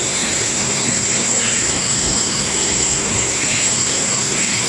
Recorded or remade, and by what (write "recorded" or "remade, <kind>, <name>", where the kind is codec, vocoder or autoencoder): remade, codec, SNAC